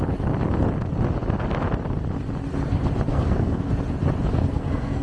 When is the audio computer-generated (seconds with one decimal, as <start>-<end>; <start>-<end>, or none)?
3.1-3.7; 4.3-5.0

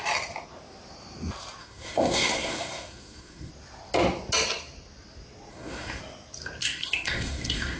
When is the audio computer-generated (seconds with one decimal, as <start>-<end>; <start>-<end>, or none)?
1.6-3.5; 5.5-6.0; 6.6-7.8

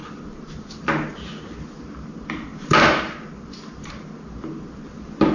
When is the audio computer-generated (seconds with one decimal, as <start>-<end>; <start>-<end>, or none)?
none